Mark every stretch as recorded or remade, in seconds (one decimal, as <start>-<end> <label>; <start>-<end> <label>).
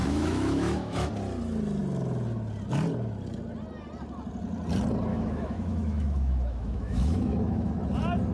0.0-1.1 remade; 1.1-5.1 recorded; 5.1-7.7 remade; 7.7-8.3 recorded